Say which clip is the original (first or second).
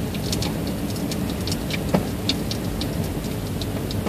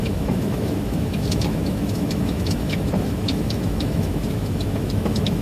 first